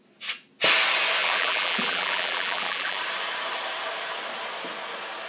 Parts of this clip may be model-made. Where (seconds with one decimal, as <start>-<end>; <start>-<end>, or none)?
1.2-3.0